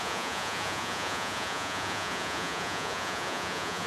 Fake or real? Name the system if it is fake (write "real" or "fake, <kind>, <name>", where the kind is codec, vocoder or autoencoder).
fake, vocoder, Vocos